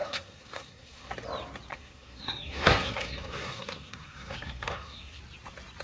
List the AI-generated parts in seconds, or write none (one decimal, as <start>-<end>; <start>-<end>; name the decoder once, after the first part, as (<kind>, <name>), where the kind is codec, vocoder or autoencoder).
0.0-1.1 (codec, SNAC); 1.7-5.2